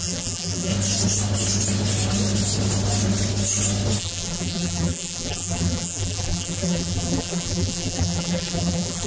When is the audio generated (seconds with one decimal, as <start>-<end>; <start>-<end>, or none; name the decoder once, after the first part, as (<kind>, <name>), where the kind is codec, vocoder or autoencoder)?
0.0-0.7 (vocoder, BigVGAN v2); 4.0-9.1